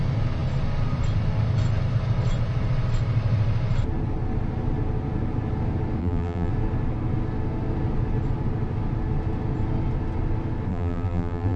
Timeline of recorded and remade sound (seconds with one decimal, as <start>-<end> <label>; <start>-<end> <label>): 0.0-6.0 recorded; 6.0-6.5 remade; 6.5-10.7 recorded; 10.7-11.6 remade

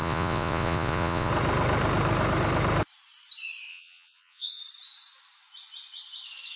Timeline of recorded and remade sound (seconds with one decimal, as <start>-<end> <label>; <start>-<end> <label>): 0.0-1.3 remade; 1.3-3.7 recorded; 3.7-4.6 remade; 4.6-6.6 recorded

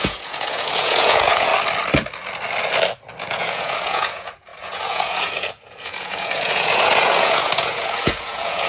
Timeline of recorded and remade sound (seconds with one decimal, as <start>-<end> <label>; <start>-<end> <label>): 0.0-1.5 remade; 1.5-3.2 recorded; 3.2-8.7 remade

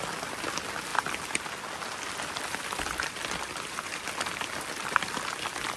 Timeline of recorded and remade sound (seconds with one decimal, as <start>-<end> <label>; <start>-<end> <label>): 0.0-5.8 recorded

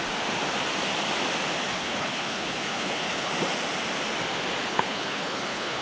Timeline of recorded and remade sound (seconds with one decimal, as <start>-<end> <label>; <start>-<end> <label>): 0.0-1.7 recorded; 1.7-3.3 remade; 3.3-4.7 recorded; 4.7-5.8 remade

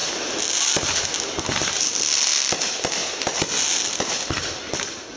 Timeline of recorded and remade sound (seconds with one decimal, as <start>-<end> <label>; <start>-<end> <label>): 0.0-5.2 recorded

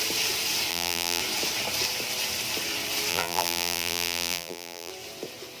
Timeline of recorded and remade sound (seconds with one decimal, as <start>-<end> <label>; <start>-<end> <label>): 0.0-0.7 recorded; 0.7-1.2 remade; 1.2-3.1 recorded; 3.1-4.9 remade; 4.9-5.6 recorded

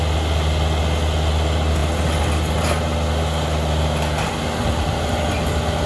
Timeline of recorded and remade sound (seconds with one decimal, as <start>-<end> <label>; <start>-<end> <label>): 0.0-5.9 recorded